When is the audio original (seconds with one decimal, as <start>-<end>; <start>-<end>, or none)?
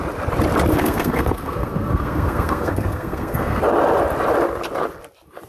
0.0-0.7; 3.6-5.5